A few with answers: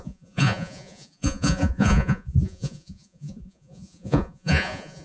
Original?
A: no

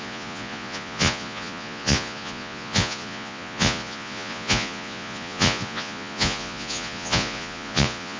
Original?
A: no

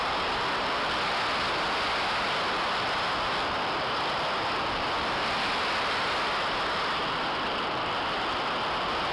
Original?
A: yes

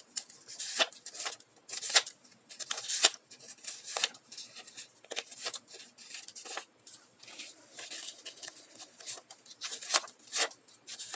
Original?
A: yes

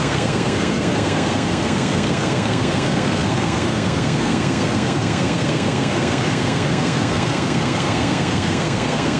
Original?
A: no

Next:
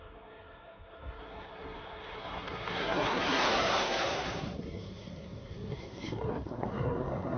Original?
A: no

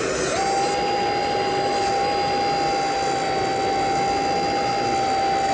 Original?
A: yes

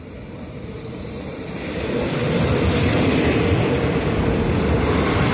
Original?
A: no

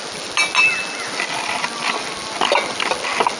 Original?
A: yes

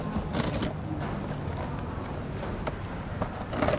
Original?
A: yes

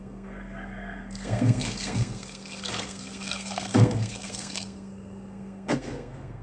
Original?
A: no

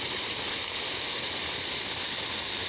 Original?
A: yes